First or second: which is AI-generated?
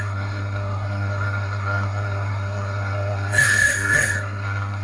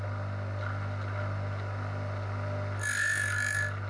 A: first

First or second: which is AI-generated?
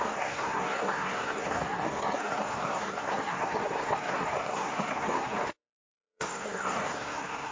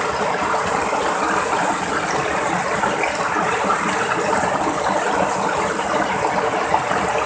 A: first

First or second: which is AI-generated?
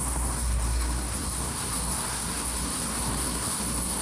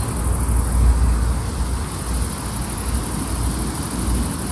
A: first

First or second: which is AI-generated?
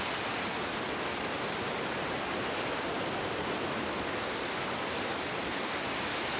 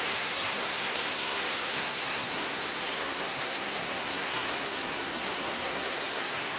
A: second